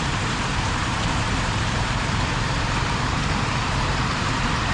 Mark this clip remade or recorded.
remade